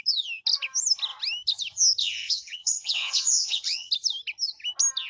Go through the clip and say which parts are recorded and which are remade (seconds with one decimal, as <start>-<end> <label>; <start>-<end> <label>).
0.0-2.0 recorded; 2.0-3.9 remade; 3.9-5.1 recorded